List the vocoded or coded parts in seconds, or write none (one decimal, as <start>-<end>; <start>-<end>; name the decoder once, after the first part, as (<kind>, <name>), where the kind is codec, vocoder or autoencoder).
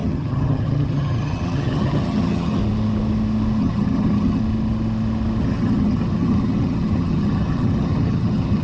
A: 0.0-2.6 (vocoder, HiFi-GAN); 3.6-4.4; 5.4-8.6